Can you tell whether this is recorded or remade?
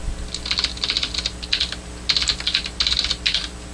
recorded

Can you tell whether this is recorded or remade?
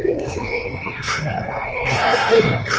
remade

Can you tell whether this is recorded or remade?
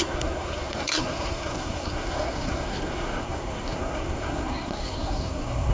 remade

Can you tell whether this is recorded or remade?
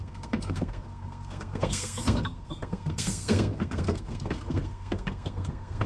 remade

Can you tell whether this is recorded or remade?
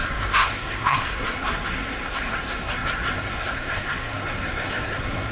remade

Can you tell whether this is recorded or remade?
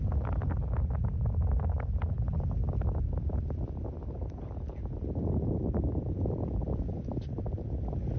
recorded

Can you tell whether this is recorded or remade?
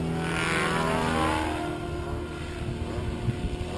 recorded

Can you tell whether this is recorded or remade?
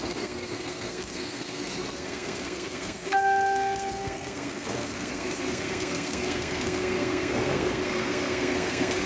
remade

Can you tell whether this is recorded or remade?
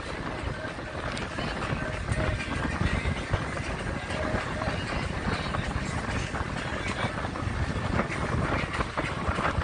recorded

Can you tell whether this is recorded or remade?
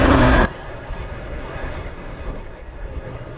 remade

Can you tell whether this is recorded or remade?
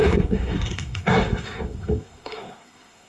remade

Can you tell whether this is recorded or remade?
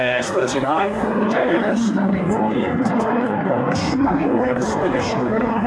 remade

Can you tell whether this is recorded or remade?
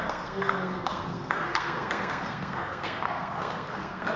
remade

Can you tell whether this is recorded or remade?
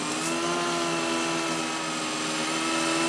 recorded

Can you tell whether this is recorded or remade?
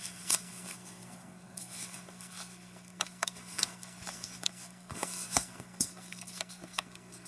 remade